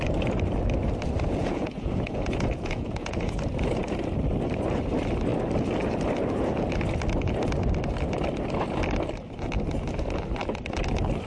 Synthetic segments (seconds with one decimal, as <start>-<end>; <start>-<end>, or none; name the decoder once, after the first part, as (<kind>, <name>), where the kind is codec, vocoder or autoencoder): 1.4-3.4 (vocoder, Vocos)